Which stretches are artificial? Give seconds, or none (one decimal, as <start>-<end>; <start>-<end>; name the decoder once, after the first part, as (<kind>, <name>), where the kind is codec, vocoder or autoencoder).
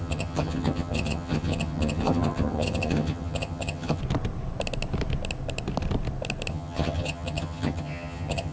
0.0-4.0 (vocoder, HiFi-GAN); 6.5-8.5